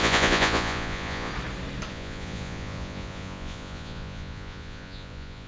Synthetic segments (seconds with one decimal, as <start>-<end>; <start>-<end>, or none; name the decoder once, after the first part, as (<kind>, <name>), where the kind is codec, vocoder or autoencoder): 0.0-1.3 (vocoder, Vocos); 1.9-5.5